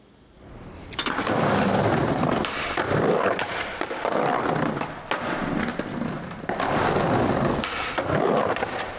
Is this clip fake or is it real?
real